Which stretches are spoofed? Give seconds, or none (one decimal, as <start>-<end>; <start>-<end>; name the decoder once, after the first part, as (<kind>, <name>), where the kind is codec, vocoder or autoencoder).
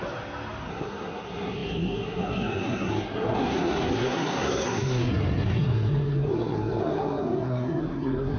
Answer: 0.7-8.4 (codec, SNAC)